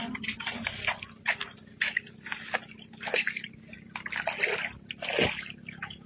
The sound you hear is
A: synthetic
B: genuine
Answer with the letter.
B